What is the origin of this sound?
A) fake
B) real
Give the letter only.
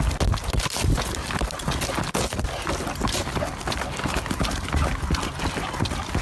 B